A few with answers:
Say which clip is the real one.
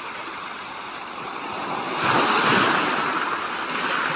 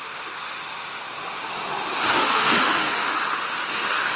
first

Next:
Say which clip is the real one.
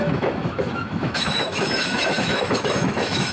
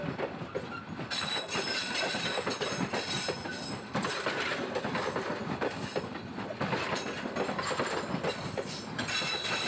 second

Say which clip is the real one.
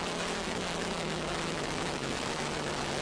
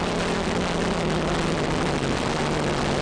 second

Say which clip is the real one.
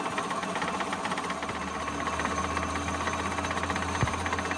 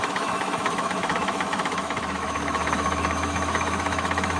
first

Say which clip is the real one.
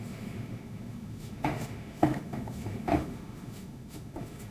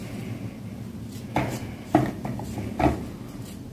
second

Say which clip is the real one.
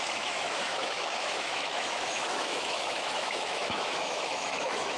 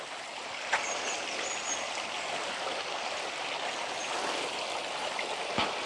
second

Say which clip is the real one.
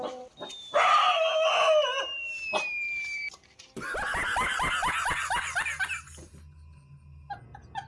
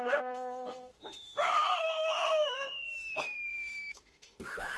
first